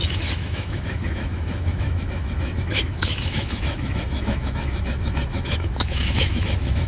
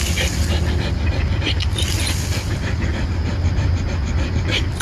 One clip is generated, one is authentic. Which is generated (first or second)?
first